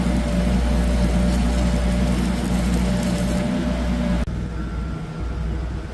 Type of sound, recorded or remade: recorded